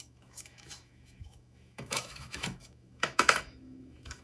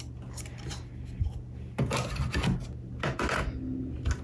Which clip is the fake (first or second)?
first